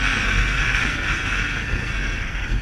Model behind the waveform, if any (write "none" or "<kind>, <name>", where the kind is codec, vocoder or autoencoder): codec, SNAC